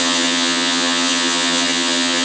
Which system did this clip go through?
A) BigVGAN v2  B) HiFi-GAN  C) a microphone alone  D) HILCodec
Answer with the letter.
B